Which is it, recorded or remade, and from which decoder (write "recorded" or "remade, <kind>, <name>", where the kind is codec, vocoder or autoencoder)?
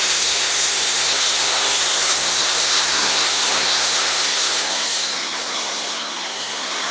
remade, codec, SNAC